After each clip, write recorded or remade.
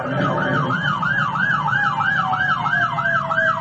recorded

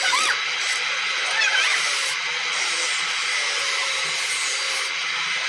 recorded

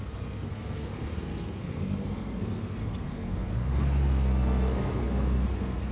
remade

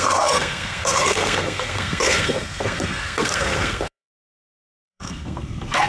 remade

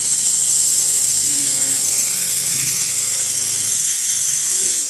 remade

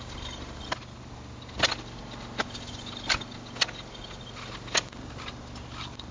recorded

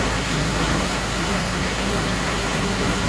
remade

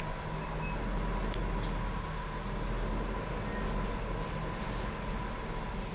recorded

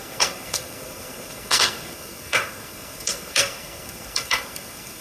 remade